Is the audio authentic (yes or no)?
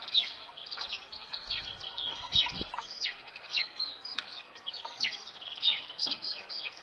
no